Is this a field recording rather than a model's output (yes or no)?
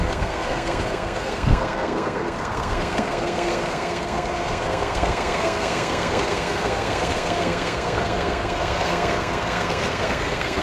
no